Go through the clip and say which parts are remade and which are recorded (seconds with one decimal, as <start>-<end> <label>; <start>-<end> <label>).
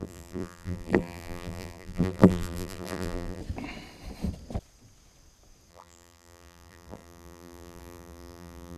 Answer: 0.0-3.4 remade; 3.4-5.7 recorded; 5.7-8.8 remade